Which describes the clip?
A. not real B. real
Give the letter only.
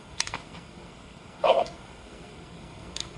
A